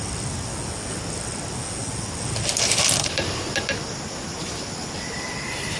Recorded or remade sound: recorded